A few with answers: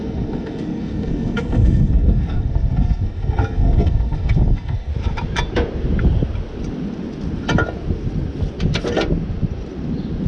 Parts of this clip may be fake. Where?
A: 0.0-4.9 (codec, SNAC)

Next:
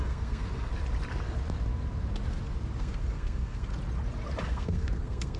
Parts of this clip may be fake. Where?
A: 0.0-0.7 (codec, SNAC); 2.8-3.7; 4.4-5.4

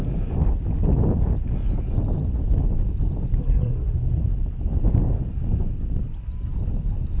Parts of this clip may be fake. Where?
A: 3.4-4.2 (codec, SNAC)

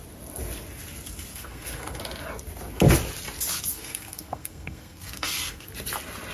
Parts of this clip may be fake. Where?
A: 1.3-2.0 (codec, SNAC); 3.7-5.7